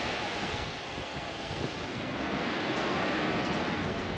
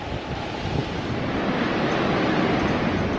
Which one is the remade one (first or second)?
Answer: first